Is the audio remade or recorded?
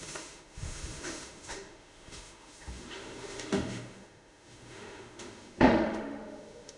remade